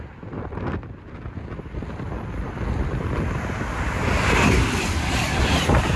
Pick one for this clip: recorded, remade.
recorded